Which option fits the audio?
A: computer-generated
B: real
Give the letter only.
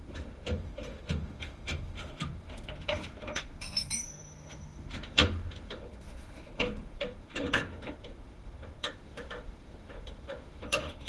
A